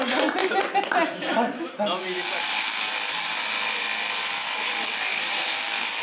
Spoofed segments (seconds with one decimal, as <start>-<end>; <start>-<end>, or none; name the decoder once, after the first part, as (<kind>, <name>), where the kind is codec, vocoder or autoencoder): 4.4-5.6 (vocoder, BigVGAN v2)